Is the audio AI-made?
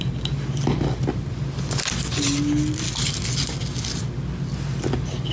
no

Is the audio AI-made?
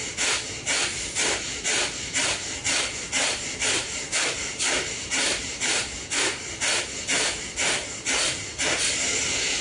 no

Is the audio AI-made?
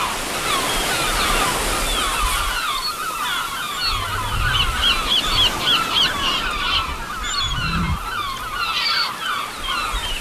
no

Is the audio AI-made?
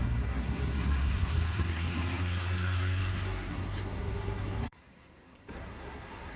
yes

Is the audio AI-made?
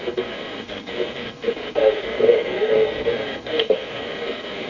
yes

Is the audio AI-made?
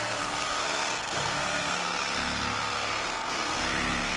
yes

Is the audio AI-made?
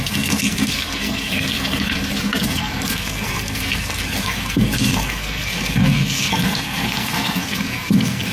yes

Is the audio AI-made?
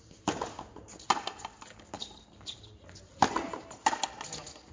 no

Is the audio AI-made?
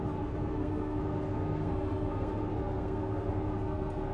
yes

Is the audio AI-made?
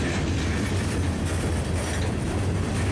no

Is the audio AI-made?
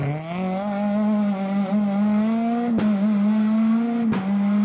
no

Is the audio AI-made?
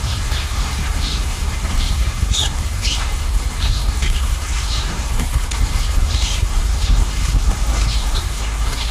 yes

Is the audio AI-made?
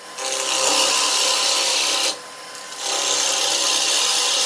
no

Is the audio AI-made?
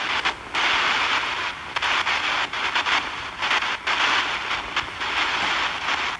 no